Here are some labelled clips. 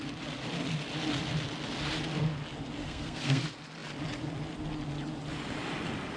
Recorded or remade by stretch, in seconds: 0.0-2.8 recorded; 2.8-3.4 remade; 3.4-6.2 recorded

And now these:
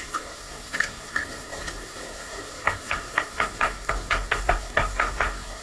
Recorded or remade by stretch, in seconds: 0.0-5.6 remade